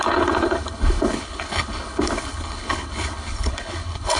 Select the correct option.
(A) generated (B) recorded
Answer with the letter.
A